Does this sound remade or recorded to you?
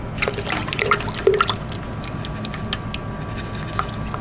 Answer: recorded